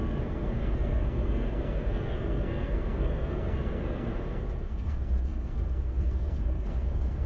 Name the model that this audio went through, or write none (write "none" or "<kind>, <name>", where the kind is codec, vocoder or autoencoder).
codec, SNAC